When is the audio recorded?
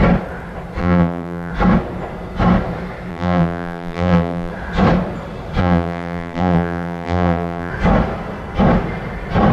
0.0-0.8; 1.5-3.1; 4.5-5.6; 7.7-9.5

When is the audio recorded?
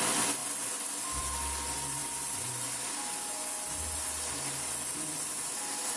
0.0-6.0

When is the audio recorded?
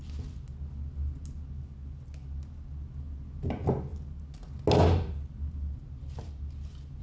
0.0-7.0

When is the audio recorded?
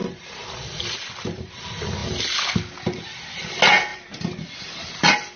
1.1-3.9; 4.7-5.4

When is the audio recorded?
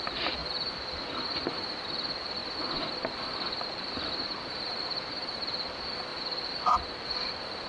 0.0-2.4; 5.0-6.1; 6.6-7.7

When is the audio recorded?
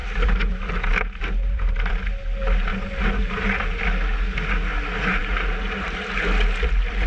1.9-2.7; 3.8-5.2; 6.1-7.1